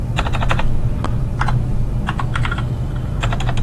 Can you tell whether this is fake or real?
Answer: real